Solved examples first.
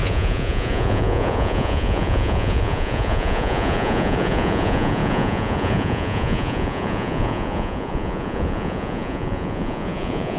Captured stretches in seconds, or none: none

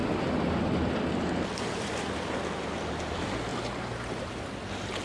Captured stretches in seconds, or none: 0.0-3.5; 4.3-5.0

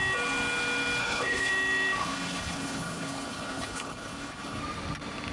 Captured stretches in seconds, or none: 0.0-1.0; 1.5-2.0; 4.6-5.3

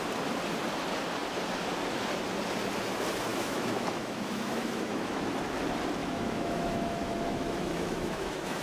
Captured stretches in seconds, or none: 0.0-3.3; 5.3-6.0

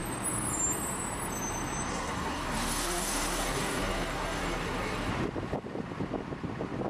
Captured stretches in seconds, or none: 0.0-1.9; 5.1-6.9

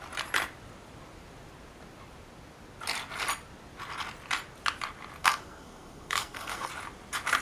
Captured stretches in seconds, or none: 0.0-5.2; 6.7-7.4

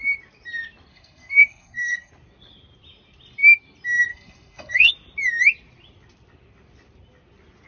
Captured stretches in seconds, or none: 0.0-0.9; 2.1-4.1; 4.9-7.7

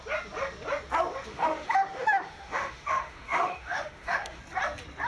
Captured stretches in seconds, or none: 0.0-1.3; 4.4-5.1